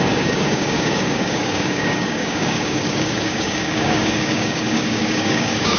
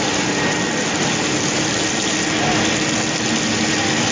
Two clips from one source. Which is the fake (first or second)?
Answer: first